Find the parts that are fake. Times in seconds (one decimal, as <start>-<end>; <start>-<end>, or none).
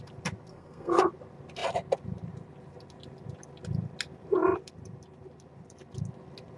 0.5-1.0